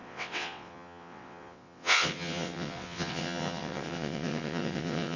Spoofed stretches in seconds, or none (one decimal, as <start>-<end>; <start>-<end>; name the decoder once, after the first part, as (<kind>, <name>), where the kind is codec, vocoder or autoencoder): 0.0-5.2 (vocoder, WaveNeXt)